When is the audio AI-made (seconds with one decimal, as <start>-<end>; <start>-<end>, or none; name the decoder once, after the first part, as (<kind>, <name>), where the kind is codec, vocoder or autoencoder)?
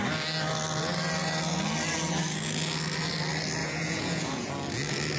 3.6-4.5 (vocoder, Vocos)